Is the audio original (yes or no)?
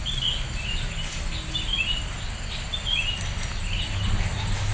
yes